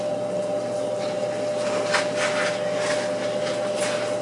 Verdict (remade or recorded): recorded